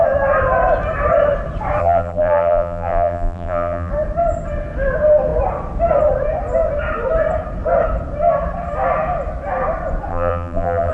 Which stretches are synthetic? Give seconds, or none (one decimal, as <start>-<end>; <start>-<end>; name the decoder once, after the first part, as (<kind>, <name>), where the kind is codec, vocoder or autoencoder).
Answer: 1.8-3.9 (vocoder, BigVGAN v2); 10.1-10.9